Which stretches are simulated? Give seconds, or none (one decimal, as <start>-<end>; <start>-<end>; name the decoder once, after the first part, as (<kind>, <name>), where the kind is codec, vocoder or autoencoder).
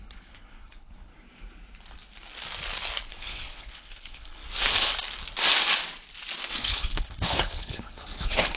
0.0-1.1 (codec, HILCodec); 3.1-4.4; 6.6-8.6